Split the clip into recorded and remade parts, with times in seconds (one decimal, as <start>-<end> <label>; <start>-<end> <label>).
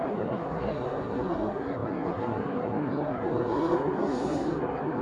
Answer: 0.0-5.0 remade